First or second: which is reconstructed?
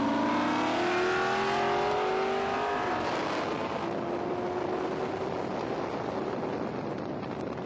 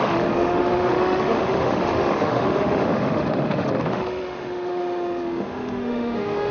second